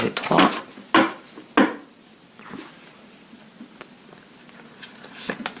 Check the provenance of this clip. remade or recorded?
recorded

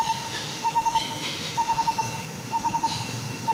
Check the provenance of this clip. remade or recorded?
remade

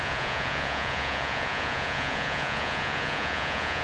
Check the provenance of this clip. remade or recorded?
remade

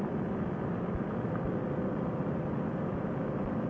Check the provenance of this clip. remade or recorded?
recorded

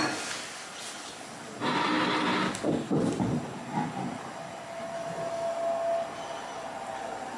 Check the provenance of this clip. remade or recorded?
recorded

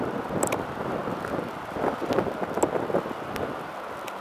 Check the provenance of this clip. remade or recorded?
recorded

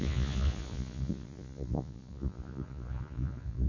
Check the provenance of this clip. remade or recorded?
remade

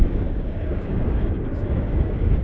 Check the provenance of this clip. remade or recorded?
remade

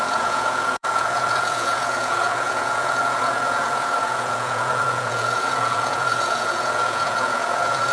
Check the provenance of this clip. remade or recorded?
remade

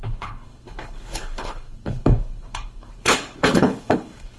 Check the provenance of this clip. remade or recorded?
remade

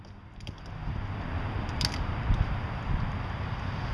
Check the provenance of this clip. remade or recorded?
recorded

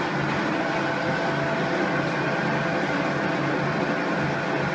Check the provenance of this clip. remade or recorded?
recorded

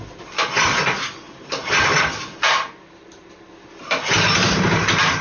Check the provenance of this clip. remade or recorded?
recorded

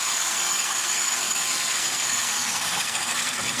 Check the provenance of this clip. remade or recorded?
remade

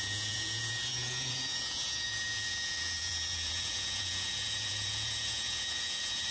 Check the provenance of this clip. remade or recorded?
remade